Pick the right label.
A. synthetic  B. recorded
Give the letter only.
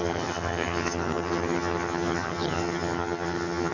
A